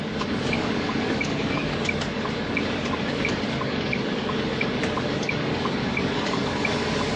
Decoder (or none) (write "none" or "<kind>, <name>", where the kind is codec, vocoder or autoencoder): codec, DAC